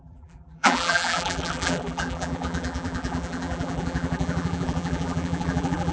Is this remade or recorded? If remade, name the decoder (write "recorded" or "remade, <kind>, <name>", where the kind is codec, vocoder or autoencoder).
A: remade, vocoder, BigVGAN v2